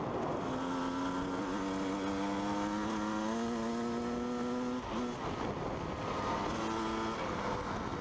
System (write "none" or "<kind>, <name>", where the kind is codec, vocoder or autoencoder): none